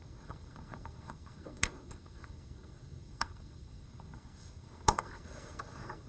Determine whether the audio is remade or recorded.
remade